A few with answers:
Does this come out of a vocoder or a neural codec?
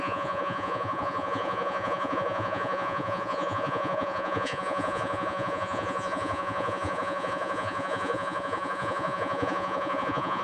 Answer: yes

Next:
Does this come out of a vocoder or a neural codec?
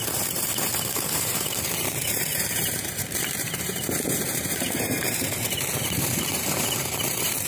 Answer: yes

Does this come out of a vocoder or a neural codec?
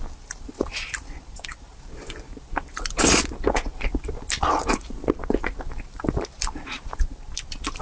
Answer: no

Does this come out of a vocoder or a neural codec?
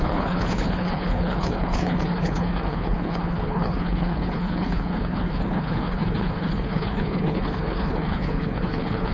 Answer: yes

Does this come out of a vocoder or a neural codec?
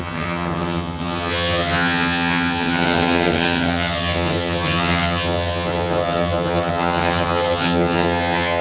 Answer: yes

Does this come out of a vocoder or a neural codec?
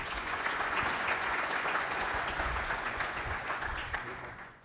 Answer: yes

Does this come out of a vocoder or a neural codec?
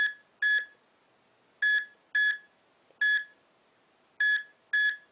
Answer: no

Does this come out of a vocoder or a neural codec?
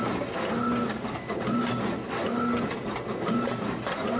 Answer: no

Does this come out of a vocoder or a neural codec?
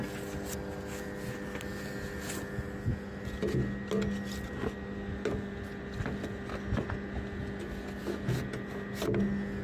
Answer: no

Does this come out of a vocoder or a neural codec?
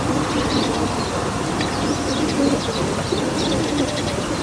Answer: yes